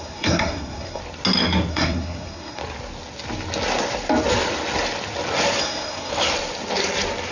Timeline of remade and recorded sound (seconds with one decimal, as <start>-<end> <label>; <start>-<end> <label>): 0.0-1.0 remade; 1.0-1.7 recorded; 1.7-2.6 remade; 2.6-5.6 recorded; 5.6-6.1 remade; 6.1-7.3 recorded